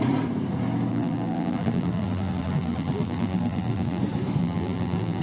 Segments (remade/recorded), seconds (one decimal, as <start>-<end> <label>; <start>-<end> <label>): 0.0-0.9 recorded; 0.9-4.0 remade; 4.0-4.4 recorded; 4.4-5.2 remade